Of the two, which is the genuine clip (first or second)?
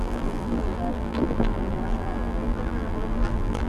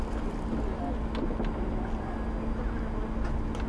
second